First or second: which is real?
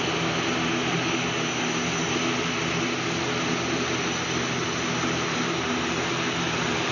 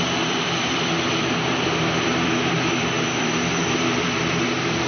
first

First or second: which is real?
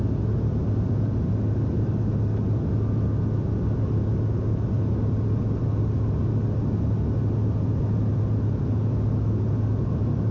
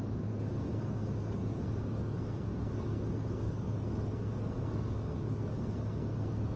first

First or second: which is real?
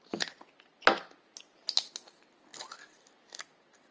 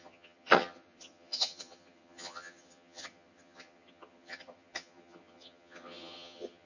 first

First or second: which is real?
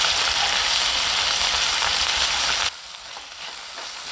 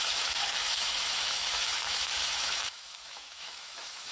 first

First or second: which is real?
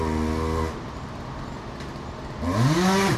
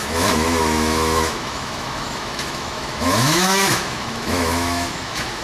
first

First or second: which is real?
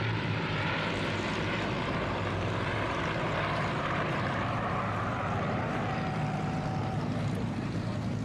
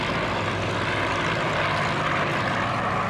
second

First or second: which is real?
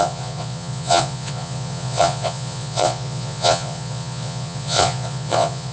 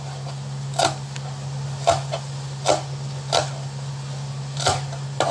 second